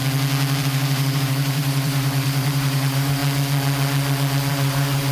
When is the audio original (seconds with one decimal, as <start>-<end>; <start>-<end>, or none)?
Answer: 0.0-0.6; 3.2-4.5